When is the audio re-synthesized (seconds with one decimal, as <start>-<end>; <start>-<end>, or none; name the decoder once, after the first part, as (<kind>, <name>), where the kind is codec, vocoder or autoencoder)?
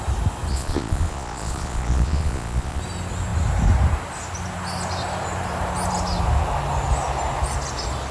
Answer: 0.5-2.8 (vocoder, Vocos)